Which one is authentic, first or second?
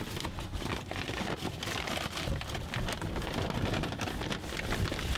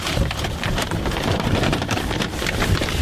first